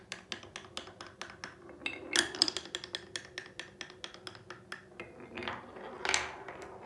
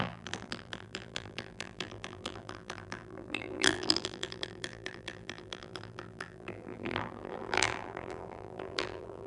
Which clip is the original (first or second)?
first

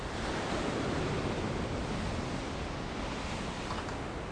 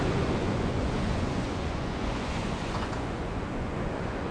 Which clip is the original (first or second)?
first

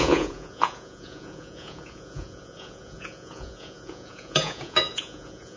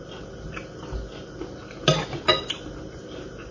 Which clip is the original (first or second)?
second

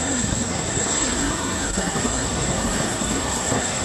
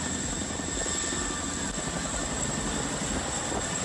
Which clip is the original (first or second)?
second